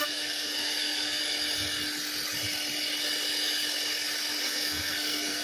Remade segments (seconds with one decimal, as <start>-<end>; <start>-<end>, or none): 0.0-1.2; 4.4-5.4